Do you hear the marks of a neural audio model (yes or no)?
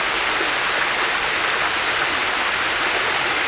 no